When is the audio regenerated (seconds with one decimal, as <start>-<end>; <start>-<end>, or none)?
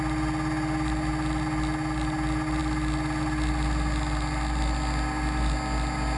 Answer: none